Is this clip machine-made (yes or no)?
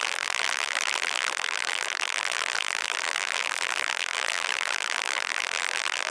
yes